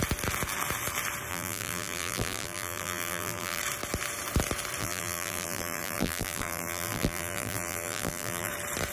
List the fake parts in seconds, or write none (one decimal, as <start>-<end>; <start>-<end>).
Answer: 1.3-3.6; 4.8-8.5